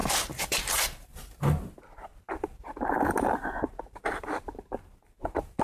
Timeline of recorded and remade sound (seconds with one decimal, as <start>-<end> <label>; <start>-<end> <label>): 0.0-0.6 remade; 0.6-2.1 recorded; 2.1-5.6 remade